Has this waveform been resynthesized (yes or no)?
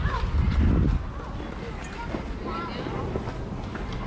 no